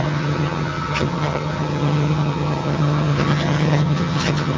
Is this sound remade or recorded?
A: remade